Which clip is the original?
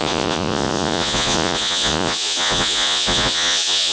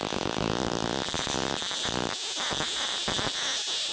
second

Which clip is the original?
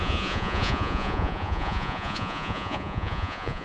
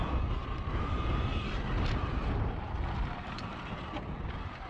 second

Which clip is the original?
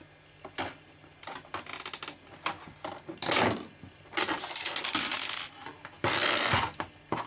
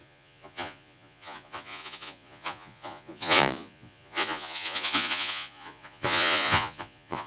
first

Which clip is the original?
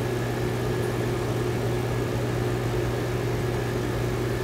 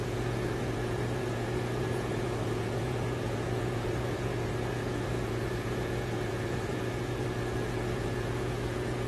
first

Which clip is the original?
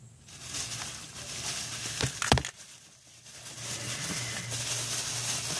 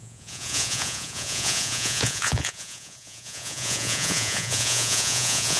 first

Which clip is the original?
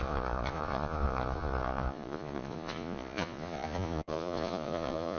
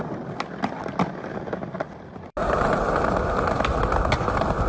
second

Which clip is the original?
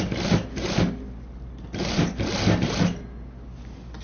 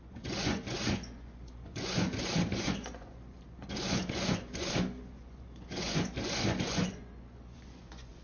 first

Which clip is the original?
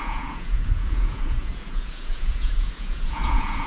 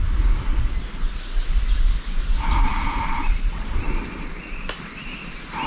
second